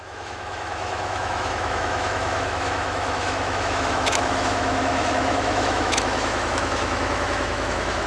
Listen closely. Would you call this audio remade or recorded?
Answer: remade